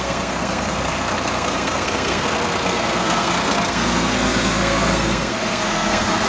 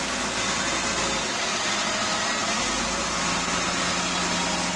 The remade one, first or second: first